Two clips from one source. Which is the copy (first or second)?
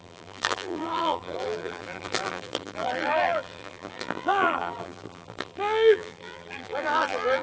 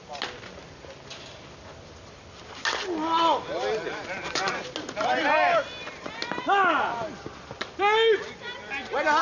first